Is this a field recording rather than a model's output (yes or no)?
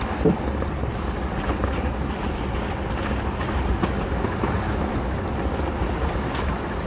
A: yes